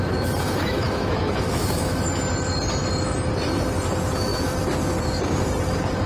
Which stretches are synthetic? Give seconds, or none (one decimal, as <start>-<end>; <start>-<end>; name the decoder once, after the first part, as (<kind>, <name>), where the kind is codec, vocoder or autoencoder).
0.6-2.1 (autoencoder, DAC-VAE)